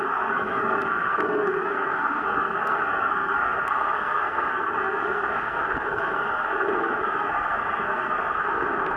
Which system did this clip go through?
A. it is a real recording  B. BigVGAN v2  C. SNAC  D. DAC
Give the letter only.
C